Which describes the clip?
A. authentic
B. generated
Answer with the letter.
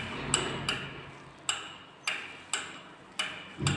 A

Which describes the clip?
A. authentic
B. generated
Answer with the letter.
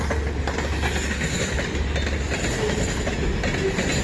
A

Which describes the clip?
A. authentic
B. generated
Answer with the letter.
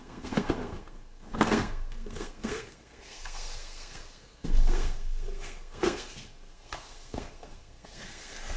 B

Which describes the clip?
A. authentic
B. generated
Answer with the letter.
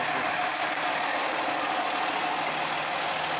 A